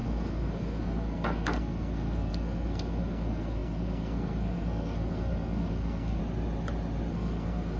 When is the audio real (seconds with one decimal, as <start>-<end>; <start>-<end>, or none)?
6.2-7.1